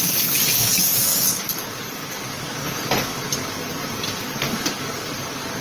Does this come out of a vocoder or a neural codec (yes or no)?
yes